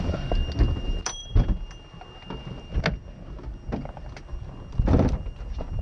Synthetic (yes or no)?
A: no